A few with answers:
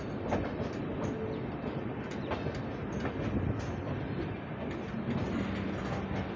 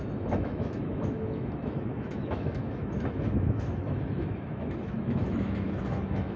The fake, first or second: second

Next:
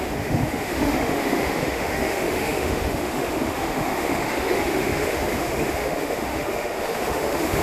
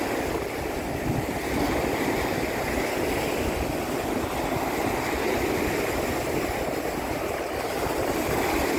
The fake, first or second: first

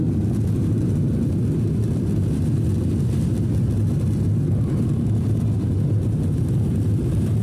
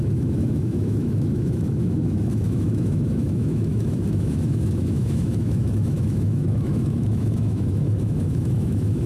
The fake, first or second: second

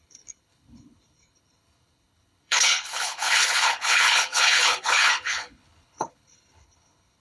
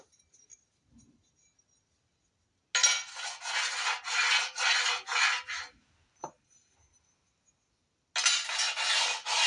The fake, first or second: first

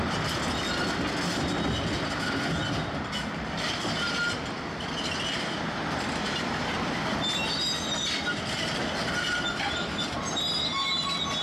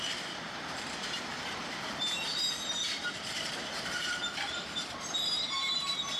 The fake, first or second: second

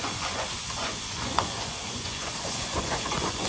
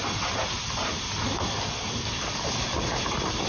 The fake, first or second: first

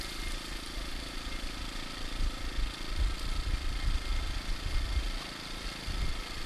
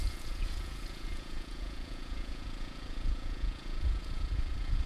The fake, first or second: second